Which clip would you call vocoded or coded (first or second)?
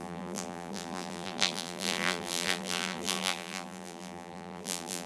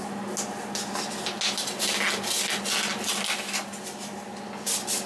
first